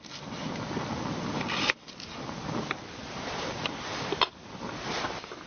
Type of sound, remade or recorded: recorded